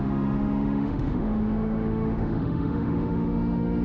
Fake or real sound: fake